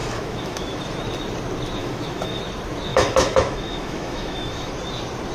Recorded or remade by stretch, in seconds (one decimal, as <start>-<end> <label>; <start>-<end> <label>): 0.0-0.8 remade; 0.8-1.8 recorded; 1.8-2.4 remade; 2.4-2.9 recorded; 2.9-4.7 remade; 4.7-5.3 recorded